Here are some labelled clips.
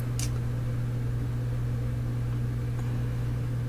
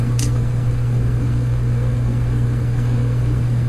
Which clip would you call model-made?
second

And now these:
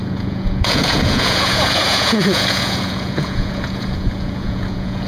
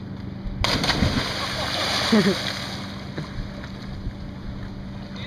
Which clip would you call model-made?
first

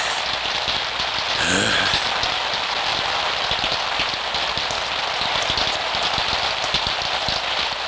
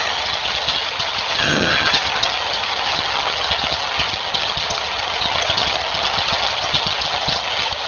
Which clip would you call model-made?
second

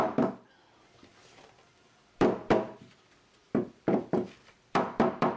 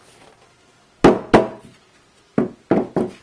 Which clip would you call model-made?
first